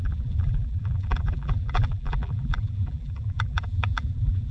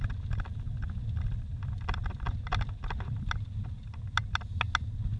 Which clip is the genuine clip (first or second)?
second